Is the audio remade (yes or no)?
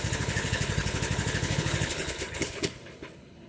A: yes